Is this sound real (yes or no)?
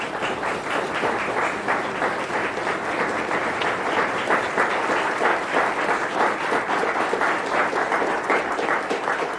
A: no